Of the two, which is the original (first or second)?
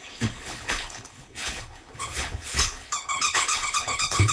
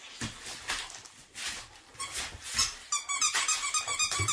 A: second